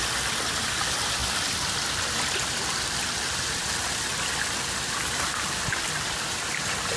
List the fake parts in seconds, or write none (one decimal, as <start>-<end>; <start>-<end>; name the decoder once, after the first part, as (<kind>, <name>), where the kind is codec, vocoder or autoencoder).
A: none